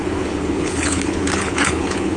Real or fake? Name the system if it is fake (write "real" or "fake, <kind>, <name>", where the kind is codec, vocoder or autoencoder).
fake, codec, HILCodec